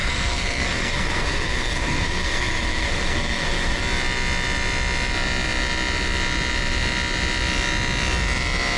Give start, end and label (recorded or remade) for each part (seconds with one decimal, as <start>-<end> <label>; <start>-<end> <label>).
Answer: 0.0-3.8 remade; 3.8-8.8 recorded